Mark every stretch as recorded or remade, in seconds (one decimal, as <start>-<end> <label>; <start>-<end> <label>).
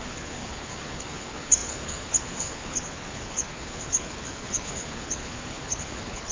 0.0-6.3 remade